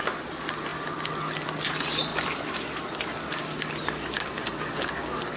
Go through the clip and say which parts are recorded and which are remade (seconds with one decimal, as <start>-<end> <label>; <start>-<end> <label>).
0.0-5.4 recorded